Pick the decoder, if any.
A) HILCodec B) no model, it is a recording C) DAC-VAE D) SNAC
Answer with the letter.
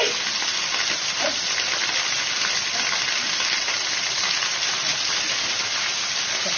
B